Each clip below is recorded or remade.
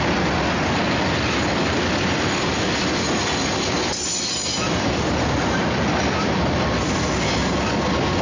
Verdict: recorded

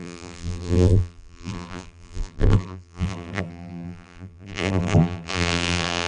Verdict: remade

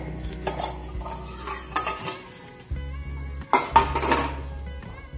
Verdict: recorded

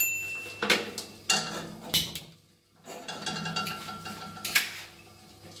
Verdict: recorded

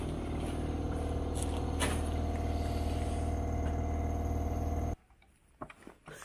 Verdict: recorded